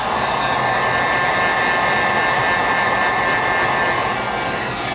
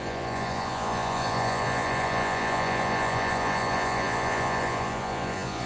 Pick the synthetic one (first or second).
second